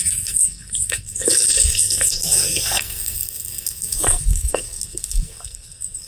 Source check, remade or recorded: remade